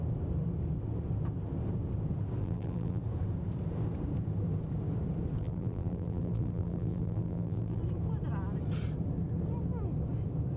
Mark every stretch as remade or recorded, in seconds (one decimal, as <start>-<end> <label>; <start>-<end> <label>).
0.0-2.4 recorded; 2.4-3.0 remade; 3.0-5.4 recorded; 5.4-7.8 remade; 7.8-10.6 recorded